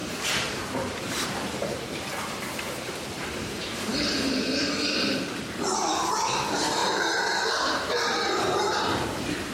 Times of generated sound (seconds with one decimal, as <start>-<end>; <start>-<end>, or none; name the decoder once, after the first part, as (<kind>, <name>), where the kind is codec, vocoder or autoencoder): 0.7-9.5 (vocoder, BigVGAN v2)